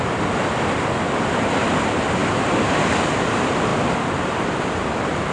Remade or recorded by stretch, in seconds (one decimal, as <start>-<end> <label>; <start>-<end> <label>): 0.0-2.2 remade; 2.2-2.8 recorded; 2.8-3.7 remade; 3.7-4.3 recorded; 4.3-5.3 remade